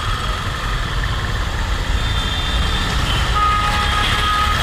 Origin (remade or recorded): recorded